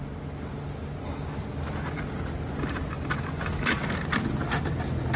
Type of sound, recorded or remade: recorded